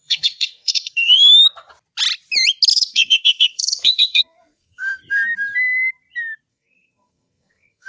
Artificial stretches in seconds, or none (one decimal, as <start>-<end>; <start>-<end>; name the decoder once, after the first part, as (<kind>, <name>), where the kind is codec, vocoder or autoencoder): 0.0-1.3 (codec, SNAC); 2.7-5.0; 6.5-7.9